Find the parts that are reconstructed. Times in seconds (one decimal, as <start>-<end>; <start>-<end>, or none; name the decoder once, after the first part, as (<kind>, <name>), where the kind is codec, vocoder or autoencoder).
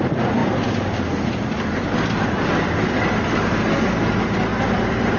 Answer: none